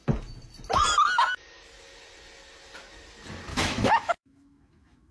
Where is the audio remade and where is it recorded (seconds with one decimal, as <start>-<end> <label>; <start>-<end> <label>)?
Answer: 0.0-3.5 recorded; 3.5-5.1 remade